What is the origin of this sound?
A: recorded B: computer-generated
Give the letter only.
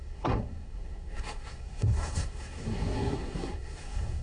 B